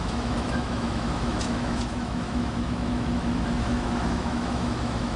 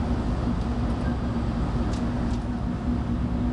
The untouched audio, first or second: second